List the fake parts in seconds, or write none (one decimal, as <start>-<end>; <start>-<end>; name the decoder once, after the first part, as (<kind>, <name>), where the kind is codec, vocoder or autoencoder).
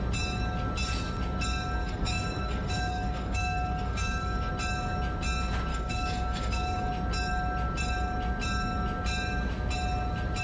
1.8-4.5 (codec, DAC); 5.7-6.9